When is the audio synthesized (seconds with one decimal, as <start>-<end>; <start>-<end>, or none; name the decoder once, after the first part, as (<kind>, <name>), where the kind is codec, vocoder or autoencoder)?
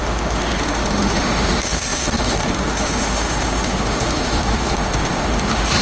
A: 0.0-5.8 (autoencoder, DAC-VAE)